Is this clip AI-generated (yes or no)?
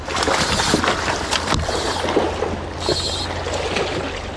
no